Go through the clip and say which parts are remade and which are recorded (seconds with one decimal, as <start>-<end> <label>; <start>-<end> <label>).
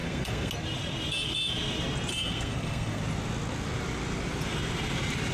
0.0-0.5 remade; 0.5-2.1 recorded; 2.1-3.0 remade; 3.0-5.3 recorded